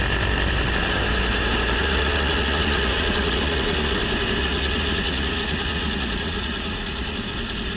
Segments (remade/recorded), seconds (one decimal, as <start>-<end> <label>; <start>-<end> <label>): 0.0-1.8 recorded; 1.8-4.0 remade; 4.0-4.4 recorded; 4.4-7.3 remade; 7.3-7.8 recorded